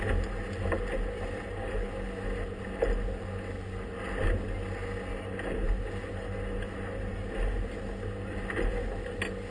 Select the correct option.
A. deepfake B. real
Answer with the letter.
B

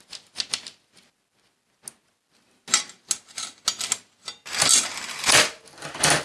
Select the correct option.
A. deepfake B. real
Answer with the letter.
B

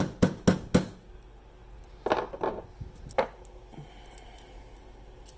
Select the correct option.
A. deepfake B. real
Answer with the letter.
B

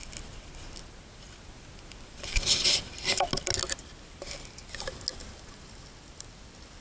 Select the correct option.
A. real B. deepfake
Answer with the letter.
A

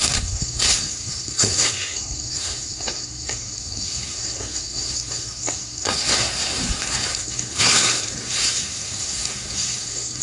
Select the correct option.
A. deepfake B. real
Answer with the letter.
A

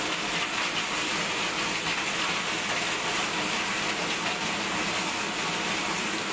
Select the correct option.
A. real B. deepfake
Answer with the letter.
A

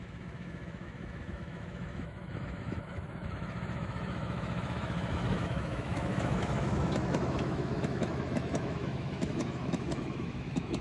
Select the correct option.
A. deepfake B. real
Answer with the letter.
A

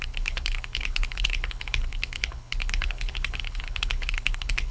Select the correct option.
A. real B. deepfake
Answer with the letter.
B